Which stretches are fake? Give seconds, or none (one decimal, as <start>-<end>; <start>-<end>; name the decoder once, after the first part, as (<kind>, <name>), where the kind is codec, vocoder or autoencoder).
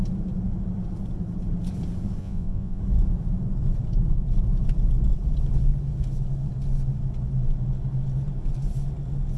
2.2-2.8 (vocoder, Vocos)